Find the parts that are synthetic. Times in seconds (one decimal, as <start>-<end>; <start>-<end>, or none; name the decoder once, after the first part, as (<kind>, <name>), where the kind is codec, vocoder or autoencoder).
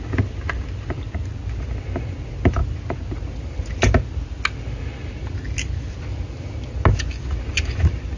none